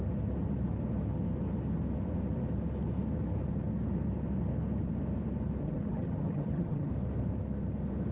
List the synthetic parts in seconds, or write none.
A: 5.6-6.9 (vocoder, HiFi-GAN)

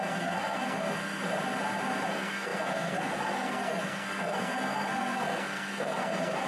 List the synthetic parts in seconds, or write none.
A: 0.0-1.2 (codec, SNAC); 2.1-6.5

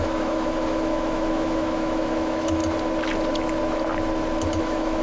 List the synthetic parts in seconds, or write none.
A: 0.0-2.6 (autoencoder, DAC-VAE); 4.6-5.0

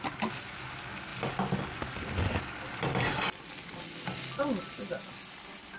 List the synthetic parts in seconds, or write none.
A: none

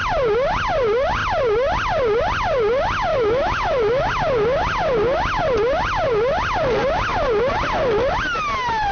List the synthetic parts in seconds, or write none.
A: 3.1-4.1 (autoencoder, DAC-VAE)

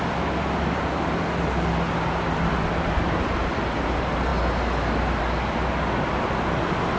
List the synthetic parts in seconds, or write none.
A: none

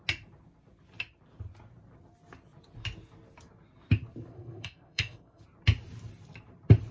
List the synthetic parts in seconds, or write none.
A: 4.3-5.4 (codec, SNAC)